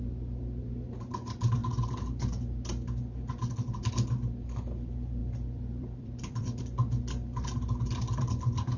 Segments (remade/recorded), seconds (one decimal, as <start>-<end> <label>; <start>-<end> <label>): 0.0-5.2 recorded; 5.2-6.6 remade; 6.6-8.8 recorded